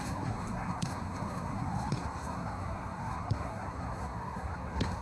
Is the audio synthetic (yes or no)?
yes